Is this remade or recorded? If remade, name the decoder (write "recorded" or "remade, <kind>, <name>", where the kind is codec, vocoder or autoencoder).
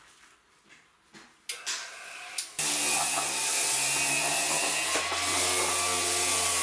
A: recorded